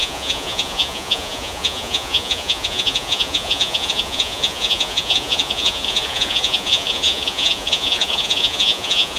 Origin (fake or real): fake